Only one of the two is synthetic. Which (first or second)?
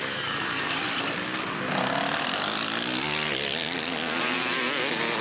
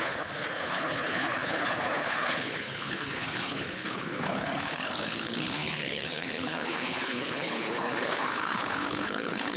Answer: second